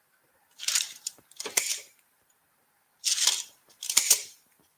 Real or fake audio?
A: fake